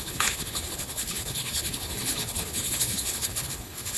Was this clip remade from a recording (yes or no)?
yes